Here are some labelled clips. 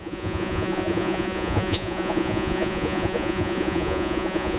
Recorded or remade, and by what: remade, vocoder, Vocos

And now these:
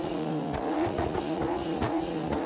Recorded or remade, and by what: remade, vocoder, Vocos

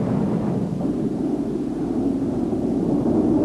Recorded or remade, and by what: recorded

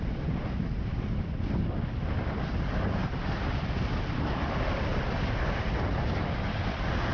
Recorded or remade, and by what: recorded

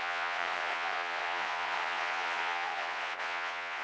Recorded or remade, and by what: remade, vocoder, Vocos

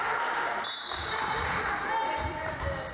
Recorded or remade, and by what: recorded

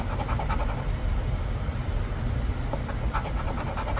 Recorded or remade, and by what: recorded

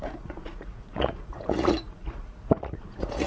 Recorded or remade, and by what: remade, vocoder, Vocos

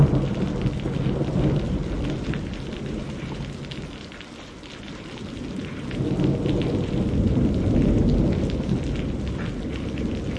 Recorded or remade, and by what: recorded